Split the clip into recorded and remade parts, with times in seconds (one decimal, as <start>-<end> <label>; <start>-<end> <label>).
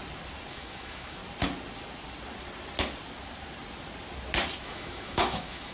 0.0-0.5 recorded; 0.5-1.2 remade; 1.2-4.6 recorded; 4.6-5.7 remade